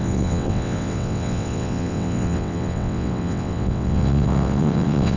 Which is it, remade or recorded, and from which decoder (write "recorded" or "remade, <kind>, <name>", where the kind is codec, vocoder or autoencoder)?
remade, vocoder, WaveNeXt